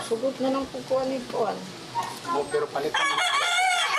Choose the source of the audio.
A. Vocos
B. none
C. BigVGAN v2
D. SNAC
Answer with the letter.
B